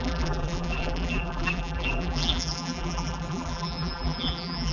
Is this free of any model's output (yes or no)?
no